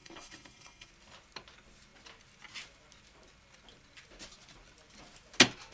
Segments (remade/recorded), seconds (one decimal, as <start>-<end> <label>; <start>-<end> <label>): 0.0-0.9 remade; 0.9-5.7 recorded